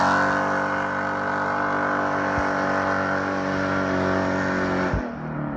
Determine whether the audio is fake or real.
real